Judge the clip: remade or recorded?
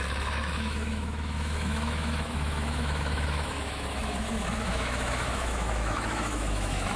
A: remade